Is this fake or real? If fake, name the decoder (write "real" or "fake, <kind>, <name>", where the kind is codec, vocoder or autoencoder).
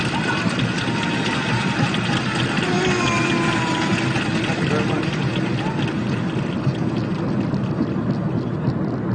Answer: real